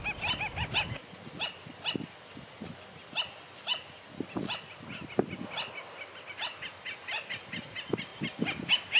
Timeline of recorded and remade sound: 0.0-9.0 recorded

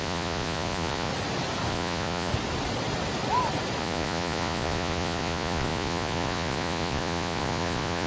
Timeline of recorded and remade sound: 0.0-1.1 remade; 1.1-1.7 recorded; 1.7-2.3 remade; 2.3-3.8 recorded; 3.8-8.1 remade

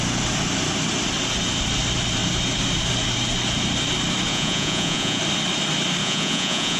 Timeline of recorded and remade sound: 0.0-4.3 recorded; 4.3-5.2 remade; 5.2-6.0 recorded; 6.0-6.8 remade

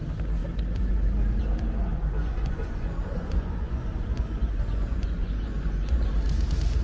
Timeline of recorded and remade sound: 0.0-1.9 recorded; 1.9-6.0 remade; 6.0-6.8 recorded

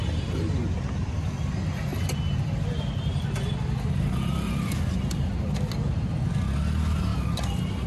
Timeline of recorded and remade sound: 0.0-7.9 recorded

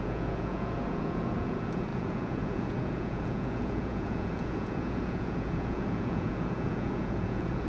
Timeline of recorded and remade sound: 0.0-7.7 remade

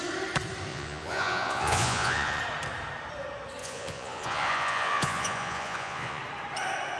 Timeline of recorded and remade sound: 0.0-0.7 recorded; 0.7-2.4 remade; 2.4-3.6 recorded; 3.6-6.2 remade; 6.2-7.0 recorded